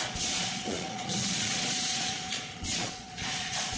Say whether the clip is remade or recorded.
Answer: remade